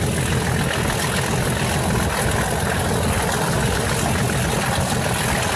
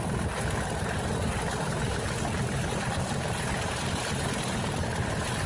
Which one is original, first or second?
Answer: first